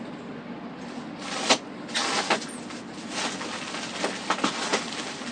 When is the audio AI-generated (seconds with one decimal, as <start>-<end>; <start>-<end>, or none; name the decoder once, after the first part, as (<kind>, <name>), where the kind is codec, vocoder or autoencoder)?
none